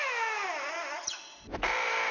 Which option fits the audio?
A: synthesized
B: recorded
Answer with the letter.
B